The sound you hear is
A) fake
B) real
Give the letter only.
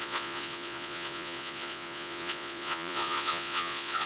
A